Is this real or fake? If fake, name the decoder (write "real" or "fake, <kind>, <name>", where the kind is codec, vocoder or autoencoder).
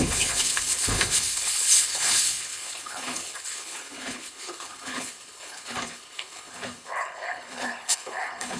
fake, codec, HILCodec